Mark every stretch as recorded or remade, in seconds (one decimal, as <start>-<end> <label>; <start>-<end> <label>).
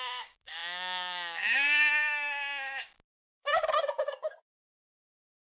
0.0-5.4 remade